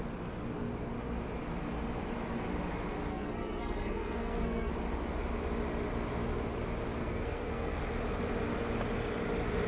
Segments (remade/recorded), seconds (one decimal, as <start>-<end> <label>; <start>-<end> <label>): 0.0-3.1 recorded; 3.1-4.7 remade; 4.7-7.0 recorded; 7.0-7.8 remade; 7.8-9.7 recorded